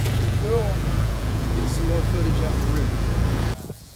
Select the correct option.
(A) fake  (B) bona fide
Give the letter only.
A